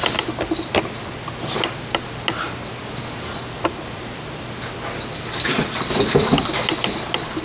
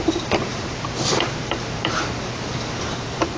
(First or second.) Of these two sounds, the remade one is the second